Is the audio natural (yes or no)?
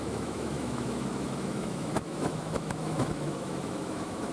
no